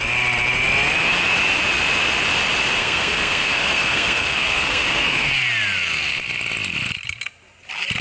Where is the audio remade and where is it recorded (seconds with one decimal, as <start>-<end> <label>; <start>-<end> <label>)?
0.0-2.8 recorded; 2.8-5.3 remade; 5.3-8.0 recorded